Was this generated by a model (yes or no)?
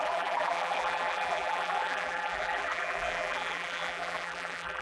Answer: yes